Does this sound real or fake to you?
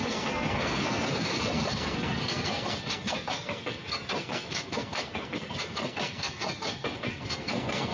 fake